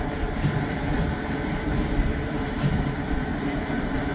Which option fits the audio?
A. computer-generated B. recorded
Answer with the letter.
A